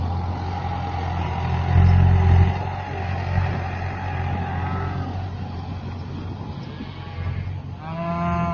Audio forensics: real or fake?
real